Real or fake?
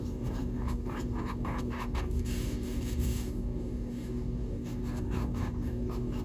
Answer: fake